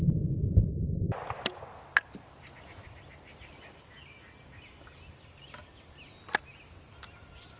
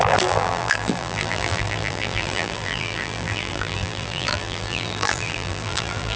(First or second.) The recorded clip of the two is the first